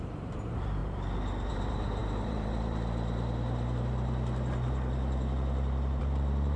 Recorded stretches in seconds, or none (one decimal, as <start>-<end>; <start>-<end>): 0.8-1.5